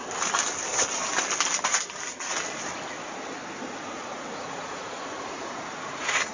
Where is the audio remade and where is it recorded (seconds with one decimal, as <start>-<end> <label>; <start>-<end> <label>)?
0.0-3.8 recorded; 3.8-6.3 remade